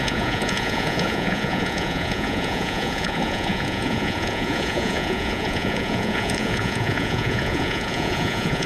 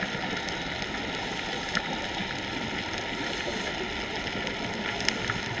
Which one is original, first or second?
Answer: second